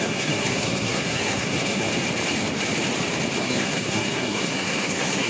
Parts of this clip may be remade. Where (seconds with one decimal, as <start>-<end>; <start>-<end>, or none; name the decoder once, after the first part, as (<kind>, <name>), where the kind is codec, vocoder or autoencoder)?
0.0-1.9 (codec, SNAC); 3.4-5.3